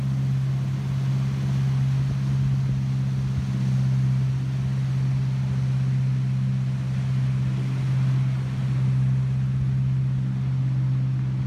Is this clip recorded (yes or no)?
yes